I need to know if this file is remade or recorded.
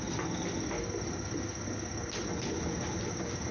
recorded